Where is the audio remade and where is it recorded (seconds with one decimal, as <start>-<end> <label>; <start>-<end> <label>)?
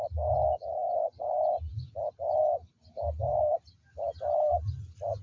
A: 0.0-5.2 recorded